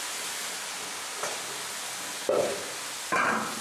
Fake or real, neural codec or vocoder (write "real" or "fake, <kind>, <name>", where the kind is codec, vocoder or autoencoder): real